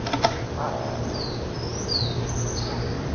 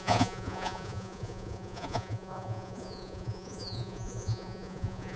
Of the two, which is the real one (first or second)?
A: first